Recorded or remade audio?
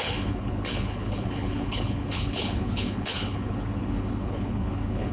remade